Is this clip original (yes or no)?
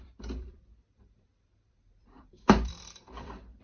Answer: no